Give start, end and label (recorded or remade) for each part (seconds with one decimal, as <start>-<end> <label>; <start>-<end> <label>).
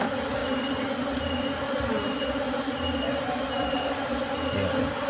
0.0-5.1 recorded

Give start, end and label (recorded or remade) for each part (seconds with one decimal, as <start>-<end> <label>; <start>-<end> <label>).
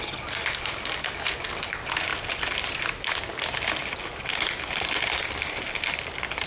0.0-6.5 recorded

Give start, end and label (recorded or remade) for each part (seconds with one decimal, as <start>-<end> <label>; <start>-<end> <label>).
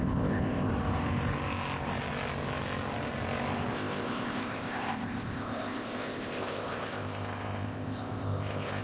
0.0-0.7 remade; 0.7-3.7 recorded; 3.7-8.8 remade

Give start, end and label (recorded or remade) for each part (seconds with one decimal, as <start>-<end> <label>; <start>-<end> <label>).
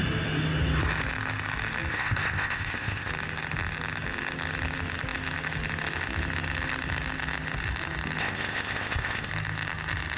0.0-1.9 recorded; 1.9-3.1 remade; 3.1-8.2 recorded; 8.2-9.3 remade; 9.3-10.2 recorded